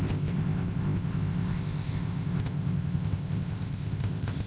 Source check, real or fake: fake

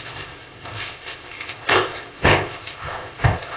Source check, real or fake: fake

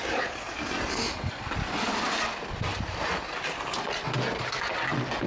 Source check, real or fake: real